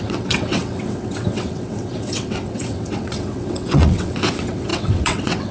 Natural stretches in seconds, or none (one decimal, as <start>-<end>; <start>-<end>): none